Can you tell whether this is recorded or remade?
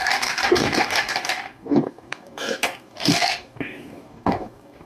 remade